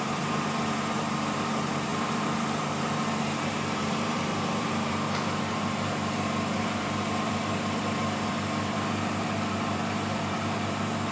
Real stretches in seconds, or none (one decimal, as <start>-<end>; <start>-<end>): none